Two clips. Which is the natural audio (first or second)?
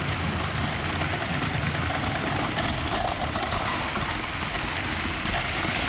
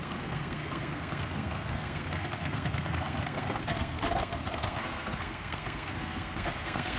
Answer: first